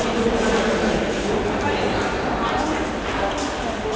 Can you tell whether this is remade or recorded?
recorded